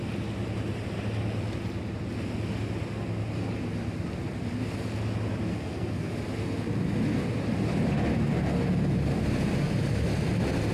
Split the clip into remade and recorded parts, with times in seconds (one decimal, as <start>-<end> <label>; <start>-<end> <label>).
0.0-5.5 recorded; 5.5-6.1 remade; 6.1-10.7 recorded